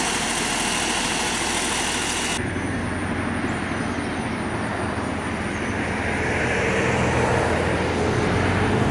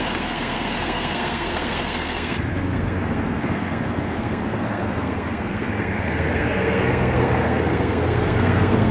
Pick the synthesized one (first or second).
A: second